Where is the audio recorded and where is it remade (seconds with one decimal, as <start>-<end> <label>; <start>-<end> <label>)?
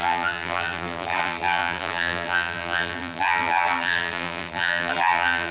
0.0-5.5 remade